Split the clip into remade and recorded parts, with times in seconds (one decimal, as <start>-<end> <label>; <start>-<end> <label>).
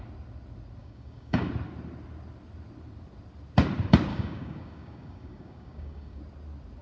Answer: 0.0-0.8 recorded; 0.8-1.5 remade; 1.5-4.1 recorded; 4.1-6.2 remade; 6.2-6.8 recorded